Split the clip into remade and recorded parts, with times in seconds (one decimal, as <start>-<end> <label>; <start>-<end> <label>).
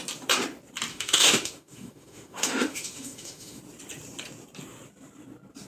0.0-0.9 recorded; 0.9-3.6 remade; 3.6-5.7 recorded